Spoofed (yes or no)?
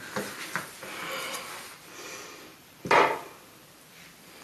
no